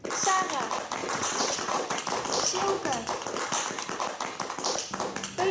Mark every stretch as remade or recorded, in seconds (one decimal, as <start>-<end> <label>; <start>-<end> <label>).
0.0-1.0 recorded; 1.0-2.0 remade; 2.0-5.5 recorded